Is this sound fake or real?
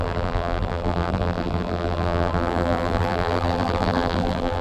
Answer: fake